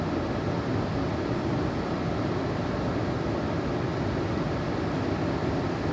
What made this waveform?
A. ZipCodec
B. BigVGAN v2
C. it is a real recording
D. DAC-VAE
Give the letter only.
C